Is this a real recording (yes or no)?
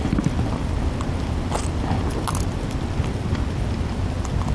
yes